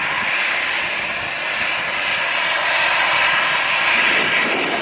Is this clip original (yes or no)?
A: yes